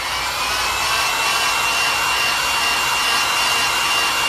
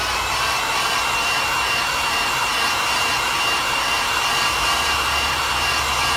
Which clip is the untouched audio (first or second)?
first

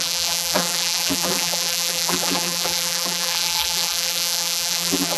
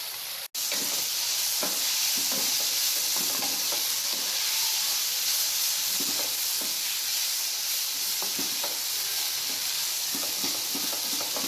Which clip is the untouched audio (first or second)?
second